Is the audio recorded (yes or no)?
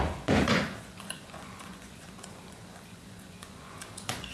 no